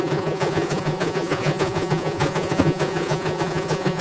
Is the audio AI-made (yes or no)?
yes